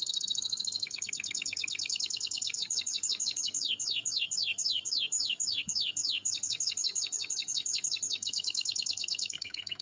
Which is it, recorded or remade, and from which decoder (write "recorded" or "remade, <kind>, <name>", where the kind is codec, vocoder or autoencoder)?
remade, codec, SNAC